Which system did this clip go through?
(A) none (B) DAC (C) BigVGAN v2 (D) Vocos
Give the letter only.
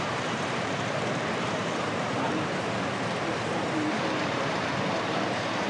C